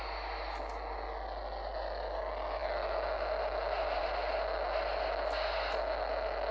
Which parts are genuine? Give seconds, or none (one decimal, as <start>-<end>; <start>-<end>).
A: 0.0-6.5